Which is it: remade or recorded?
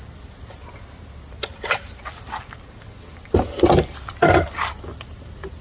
recorded